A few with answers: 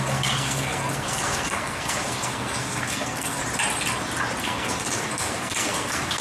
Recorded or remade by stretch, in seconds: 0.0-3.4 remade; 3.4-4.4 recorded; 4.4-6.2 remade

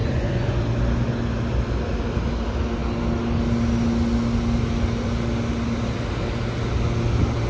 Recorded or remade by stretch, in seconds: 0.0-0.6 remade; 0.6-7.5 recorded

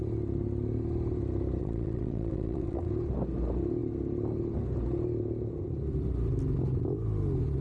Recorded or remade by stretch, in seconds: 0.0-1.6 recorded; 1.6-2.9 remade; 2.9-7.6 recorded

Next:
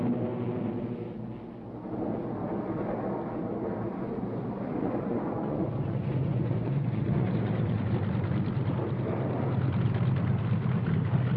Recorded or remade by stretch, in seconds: 0.0-4.8 recorded; 4.8-7.9 remade; 7.9-11.4 recorded

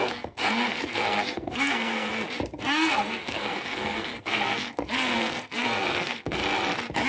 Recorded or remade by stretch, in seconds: 0.0-2.1 remade; 2.1-2.6 recorded; 2.6-6.4 remade; 6.4-7.1 recorded

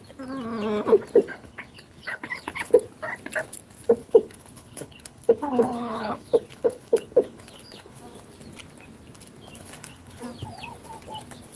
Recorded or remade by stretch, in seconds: 0.0-1.3 recorded; 1.3-2.7 remade; 2.7-4.0 recorded; 4.0-8.0 remade; 8.0-9.6 recorded; 9.6-10.2 remade; 10.2-11.6 recorded